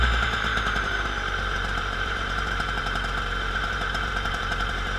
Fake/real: fake